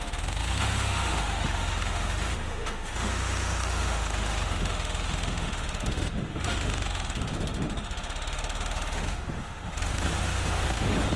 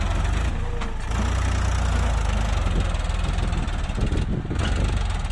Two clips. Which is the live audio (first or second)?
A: second